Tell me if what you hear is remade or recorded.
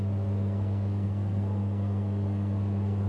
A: remade